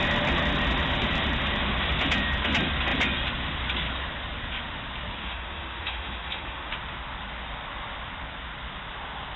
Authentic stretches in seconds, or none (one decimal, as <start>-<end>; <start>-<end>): 0.0-5.2; 6.7-9.4